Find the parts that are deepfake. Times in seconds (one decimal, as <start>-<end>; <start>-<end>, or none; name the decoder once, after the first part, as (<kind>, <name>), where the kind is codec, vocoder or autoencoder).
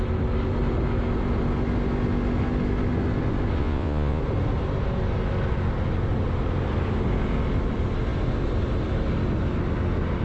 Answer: 3.6-4.2 (vocoder, Vocos)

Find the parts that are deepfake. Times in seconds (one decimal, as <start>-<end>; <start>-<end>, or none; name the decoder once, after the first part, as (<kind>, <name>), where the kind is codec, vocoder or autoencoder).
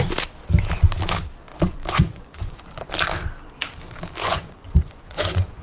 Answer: 1.5-2.9 (vocoder, Vocos); 4.2-5.6